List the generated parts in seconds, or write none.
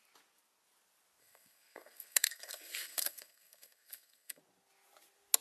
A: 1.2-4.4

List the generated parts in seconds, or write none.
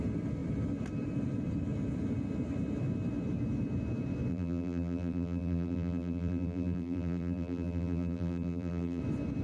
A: 4.3-9.0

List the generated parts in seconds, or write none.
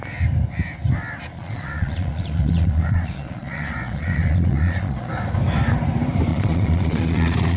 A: 1.3-5.1; 6.3-7.6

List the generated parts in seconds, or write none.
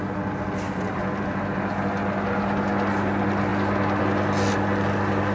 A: none